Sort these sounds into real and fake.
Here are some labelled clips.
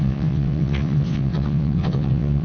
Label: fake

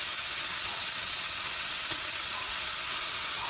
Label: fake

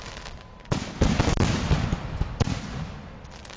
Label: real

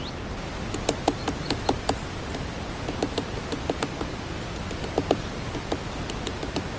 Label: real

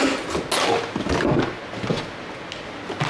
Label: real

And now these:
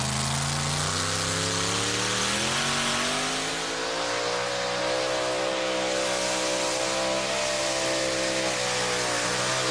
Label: real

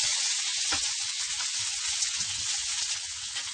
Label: fake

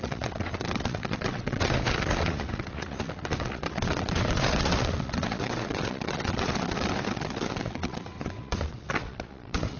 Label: fake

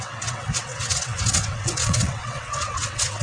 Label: fake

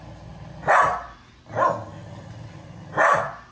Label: real